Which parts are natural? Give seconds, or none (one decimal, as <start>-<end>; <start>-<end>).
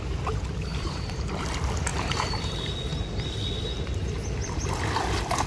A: 0.0-0.7; 1.3-1.9; 2.5-5.5